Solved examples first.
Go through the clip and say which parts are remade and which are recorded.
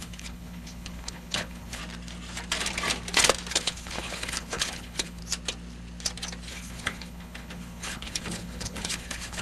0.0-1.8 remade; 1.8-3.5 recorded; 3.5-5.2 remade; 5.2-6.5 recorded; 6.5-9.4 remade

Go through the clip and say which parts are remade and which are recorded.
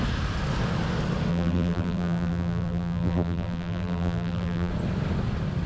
0.0-1.3 recorded; 1.3-4.7 remade; 4.7-5.7 recorded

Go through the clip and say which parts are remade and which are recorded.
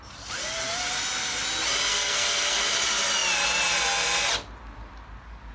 0.0-1.9 recorded; 1.9-2.6 remade; 2.6-5.5 recorded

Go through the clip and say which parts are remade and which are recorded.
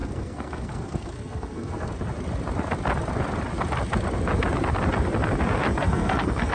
0.0-1.9 remade; 1.9-5.8 recorded; 5.8-6.5 remade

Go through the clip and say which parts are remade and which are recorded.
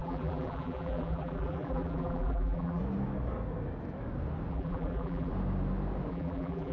0.0-2.8 remade; 2.8-4.5 recorded; 4.5-5.3 remade; 5.3-6.1 recorded; 6.1-6.7 remade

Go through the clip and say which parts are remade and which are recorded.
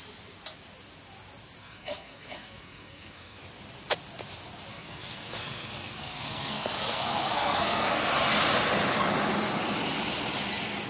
0.0-1.6 recorded; 1.6-3.4 remade; 3.4-4.7 recorded; 4.7-8.1 remade; 8.1-10.9 recorded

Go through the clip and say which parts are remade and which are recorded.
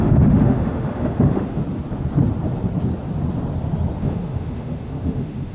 0.0-1.6 remade; 1.6-4.0 recorded; 4.0-5.5 remade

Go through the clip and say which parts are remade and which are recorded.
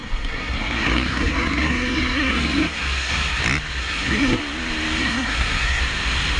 0.0-3.4 remade; 3.4-3.8 recorded; 3.8-4.4 remade; 4.4-5.0 recorded; 5.0-5.8 remade; 5.8-6.4 recorded